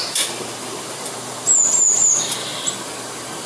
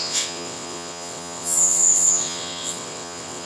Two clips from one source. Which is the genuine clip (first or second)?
first